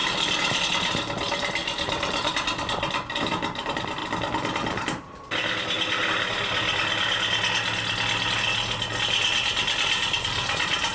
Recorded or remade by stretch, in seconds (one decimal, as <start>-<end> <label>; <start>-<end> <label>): 0.0-0.6 remade; 0.6-1.6 recorded; 1.6-2.3 remade; 2.3-10.9 recorded